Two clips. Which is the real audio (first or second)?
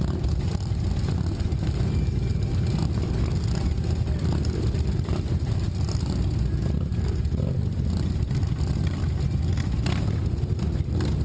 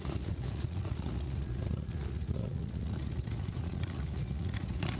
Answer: first